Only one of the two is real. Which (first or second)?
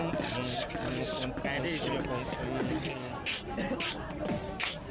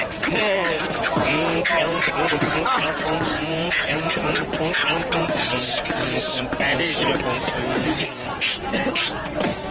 first